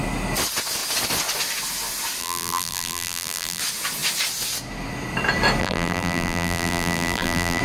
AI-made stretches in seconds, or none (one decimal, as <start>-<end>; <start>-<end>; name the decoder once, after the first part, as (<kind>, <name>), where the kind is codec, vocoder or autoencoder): 2.2-3.6 (vocoder, BigVGAN v2); 5.6-7.6